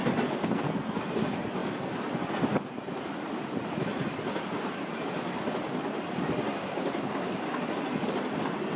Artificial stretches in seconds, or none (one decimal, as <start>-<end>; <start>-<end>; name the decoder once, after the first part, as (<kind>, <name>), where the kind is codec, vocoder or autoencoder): 0.4-0.9 (codec, SNAC)